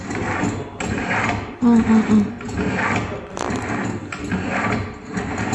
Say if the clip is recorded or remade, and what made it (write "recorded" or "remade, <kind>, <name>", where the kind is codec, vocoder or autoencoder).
recorded